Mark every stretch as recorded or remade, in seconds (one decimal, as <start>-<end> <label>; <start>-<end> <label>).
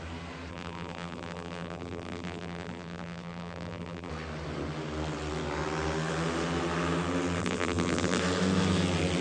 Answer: 0.0-0.5 recorded; 0.5-4.1 remade; 4.1-7.4 recorded; 7.4-8.2 remade; 8.2-9.2 recorded